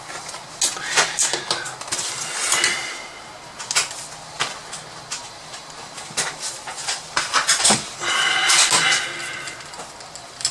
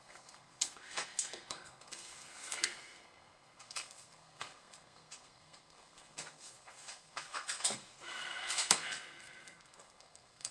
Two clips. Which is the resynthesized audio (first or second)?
second